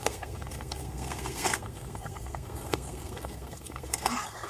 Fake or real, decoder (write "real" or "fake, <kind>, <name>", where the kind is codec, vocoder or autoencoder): fake, codec, SNAC